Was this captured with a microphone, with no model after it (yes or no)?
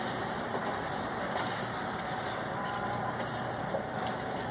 yes